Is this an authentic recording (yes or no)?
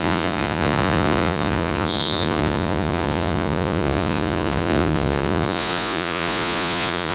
no